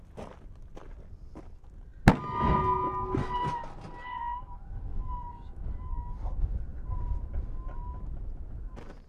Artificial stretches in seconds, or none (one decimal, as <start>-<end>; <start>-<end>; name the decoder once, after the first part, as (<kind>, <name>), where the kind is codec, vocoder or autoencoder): none